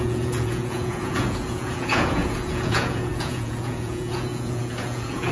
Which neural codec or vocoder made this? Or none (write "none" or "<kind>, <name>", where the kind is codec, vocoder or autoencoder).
vocoder, Vocos